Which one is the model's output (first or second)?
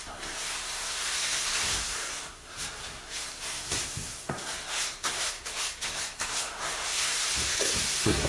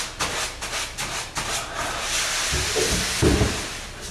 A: first